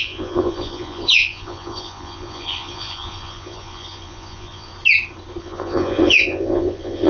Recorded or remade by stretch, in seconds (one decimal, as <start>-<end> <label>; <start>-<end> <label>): 0.0-4.7 remade; 4.7-5.4 recorded; 5.4-7.1 remade